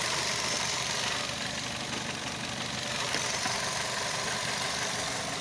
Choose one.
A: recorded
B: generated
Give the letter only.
A